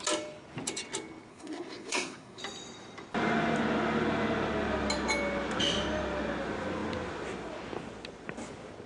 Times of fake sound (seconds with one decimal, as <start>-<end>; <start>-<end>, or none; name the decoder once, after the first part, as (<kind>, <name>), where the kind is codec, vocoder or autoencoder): 1.3-2.4 (codec, SNAC)